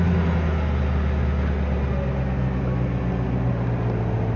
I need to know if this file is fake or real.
real